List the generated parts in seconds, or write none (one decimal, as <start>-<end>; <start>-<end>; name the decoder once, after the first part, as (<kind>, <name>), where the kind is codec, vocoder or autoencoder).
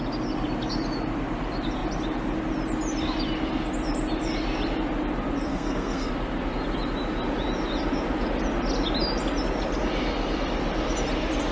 5.5-6.1 (codec, SNAC)